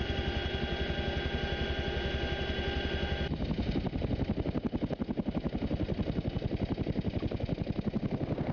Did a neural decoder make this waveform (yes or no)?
no